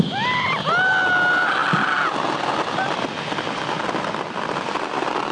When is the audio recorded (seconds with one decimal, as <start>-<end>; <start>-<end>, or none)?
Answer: 0.0-5.3